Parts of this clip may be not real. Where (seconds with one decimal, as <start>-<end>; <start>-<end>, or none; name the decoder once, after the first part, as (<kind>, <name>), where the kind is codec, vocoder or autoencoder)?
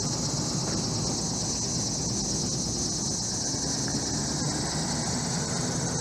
none